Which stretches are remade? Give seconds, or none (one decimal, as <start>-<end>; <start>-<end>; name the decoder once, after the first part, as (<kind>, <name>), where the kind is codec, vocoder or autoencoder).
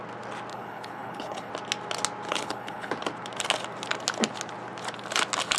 0.5-1.5 (codec, HILCodec); 2.3-2.9